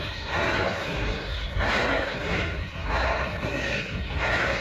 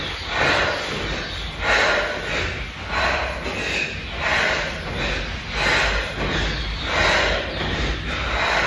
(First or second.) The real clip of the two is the second